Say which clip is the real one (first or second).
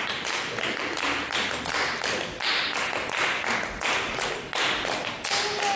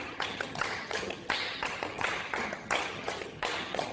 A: first